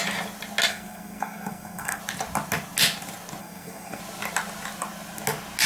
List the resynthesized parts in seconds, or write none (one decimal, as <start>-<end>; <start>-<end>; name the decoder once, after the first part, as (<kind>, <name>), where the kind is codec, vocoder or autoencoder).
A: 0.7-2.0 (codec, SNAC); 3.4-4.0